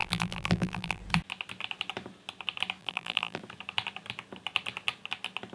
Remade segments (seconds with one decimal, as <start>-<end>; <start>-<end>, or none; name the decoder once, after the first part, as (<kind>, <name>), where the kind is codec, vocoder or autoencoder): 0.0-1.0 (vocoder, BigVGAN v2); 2.8-3.4